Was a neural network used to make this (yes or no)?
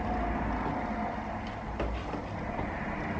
no